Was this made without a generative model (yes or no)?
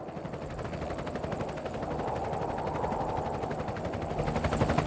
yes